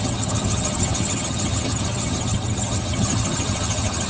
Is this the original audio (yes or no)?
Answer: no